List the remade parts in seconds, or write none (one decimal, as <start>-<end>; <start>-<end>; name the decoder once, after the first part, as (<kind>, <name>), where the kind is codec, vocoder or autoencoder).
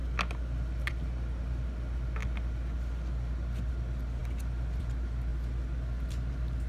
none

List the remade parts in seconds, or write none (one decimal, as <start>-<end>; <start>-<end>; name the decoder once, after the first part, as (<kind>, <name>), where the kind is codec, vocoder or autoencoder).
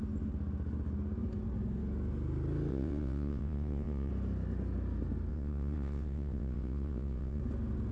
2.7-4.1 (vocoder, WaveNeXt); 5.3-7.4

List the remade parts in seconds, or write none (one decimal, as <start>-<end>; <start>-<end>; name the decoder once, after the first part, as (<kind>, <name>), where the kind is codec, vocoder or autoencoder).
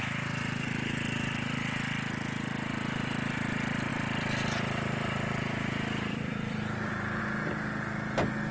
3.9-7.2 (vocoder, BigVGAN v2)